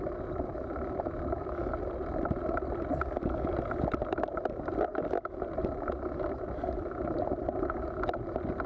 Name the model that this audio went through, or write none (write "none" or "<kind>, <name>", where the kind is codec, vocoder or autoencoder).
none